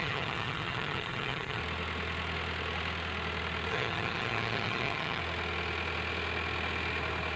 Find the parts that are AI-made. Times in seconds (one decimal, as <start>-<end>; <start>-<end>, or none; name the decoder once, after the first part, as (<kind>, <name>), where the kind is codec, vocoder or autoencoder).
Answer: 0.0-1.6 (vocoder, HiFi-GAN); 3.7-5.2